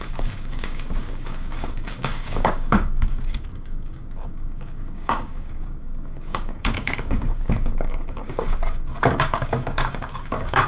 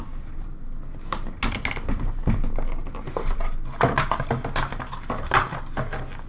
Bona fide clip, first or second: second